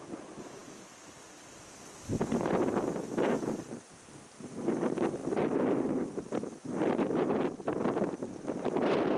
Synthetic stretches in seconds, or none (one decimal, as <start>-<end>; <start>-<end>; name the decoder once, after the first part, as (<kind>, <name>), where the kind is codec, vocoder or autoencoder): none